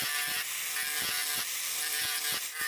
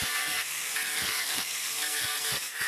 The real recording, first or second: first